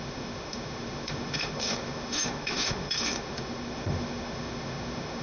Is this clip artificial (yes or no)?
yes